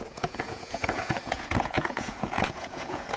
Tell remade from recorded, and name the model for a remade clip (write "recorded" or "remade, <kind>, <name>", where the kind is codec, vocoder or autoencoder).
remade, vocoder, Vocos